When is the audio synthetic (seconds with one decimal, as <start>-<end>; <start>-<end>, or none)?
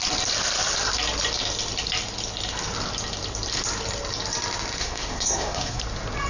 4.8-5.8